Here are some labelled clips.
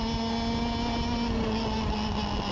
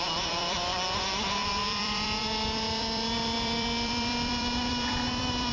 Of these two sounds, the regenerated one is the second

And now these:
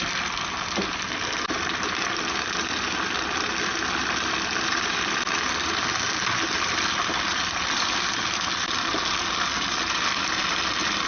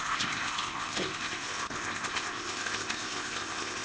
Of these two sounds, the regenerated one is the second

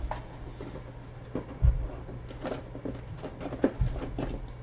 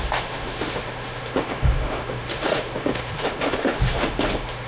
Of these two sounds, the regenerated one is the second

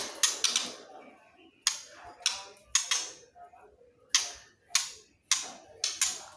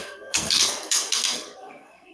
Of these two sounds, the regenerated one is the second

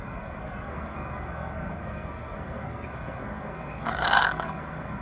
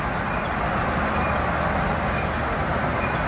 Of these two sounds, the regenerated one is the first